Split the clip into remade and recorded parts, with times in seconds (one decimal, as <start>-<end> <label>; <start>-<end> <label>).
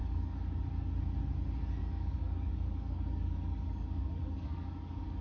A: 0.0-0.6 remade; 0.6-1.8 recorded; 1.8-5.2 remade